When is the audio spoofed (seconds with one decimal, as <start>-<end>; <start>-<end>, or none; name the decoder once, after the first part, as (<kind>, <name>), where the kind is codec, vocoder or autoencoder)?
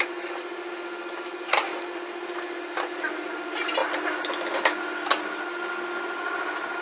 none